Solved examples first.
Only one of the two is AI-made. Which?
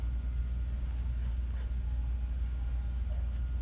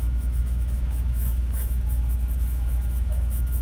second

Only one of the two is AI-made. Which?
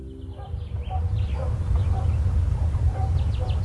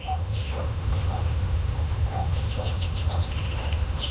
second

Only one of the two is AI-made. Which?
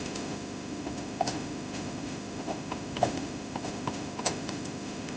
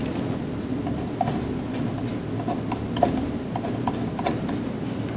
first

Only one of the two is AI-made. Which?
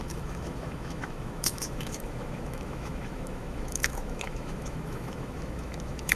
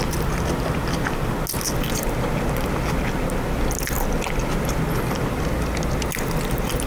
first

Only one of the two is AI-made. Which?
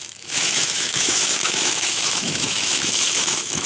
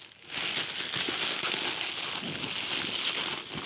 first